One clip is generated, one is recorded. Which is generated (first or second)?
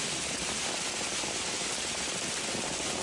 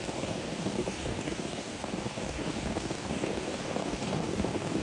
second